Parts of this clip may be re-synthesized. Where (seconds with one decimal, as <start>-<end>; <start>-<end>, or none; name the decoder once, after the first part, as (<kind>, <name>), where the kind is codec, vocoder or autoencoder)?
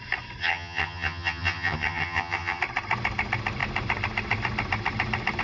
0.4-2.6 (vocoder, HiFi-GAN)